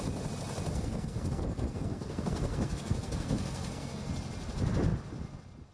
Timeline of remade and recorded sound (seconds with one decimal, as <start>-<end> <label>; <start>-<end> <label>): 0.0-0.7 recorded; 0.7-4.1 remade; 4.1-5.7 recorded